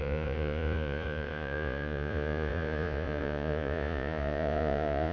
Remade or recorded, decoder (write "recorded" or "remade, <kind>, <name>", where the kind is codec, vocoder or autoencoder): remade, vocoder, Vocos